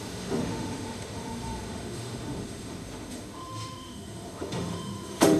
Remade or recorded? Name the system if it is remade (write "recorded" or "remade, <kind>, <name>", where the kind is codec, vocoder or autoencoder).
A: remade, autoencoder, DAC-VAE